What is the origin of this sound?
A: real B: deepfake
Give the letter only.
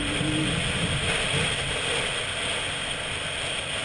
A